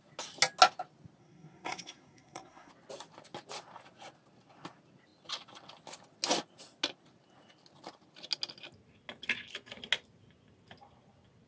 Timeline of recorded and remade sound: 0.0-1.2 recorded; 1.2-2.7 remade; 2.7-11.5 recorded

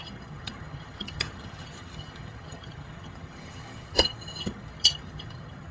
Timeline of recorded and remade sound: 0.0-5.7 remade

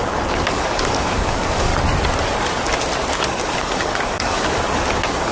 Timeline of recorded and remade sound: 0.0-1.7 remade; 1.7-3.1 recorded; 3.1-5.3 remade

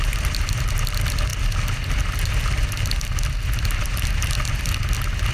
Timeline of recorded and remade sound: 0.0-5.3 recorded